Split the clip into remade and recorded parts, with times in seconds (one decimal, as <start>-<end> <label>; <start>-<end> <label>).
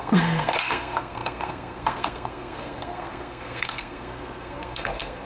0.0-5.3 remade